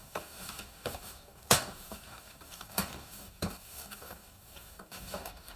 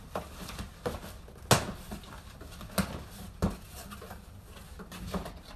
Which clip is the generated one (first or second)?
first